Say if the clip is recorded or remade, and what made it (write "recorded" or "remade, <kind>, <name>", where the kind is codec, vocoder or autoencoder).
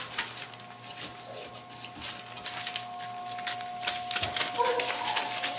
recorded